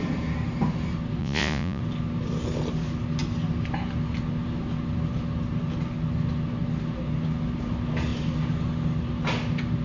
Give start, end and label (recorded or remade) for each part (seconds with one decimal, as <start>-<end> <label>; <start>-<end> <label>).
0.0-1.2 recorded; 1.2-1.8 remade; 1.8-9.8 recorded